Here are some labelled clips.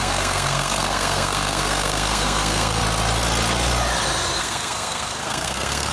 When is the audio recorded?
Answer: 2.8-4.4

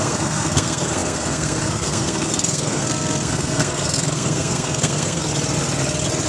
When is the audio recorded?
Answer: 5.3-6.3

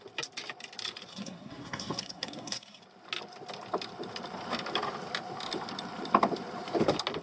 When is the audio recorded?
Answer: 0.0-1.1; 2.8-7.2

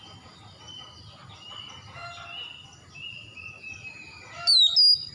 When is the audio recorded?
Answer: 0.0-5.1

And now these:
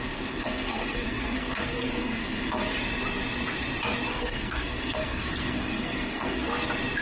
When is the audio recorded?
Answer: 2.6-4.1; 6.5-7.0